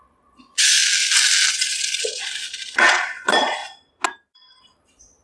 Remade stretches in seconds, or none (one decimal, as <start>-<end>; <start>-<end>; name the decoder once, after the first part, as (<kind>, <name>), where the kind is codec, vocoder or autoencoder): 0.0-0.8 (vocoder, Vocos); 1.5-3.6; 4.6-5.2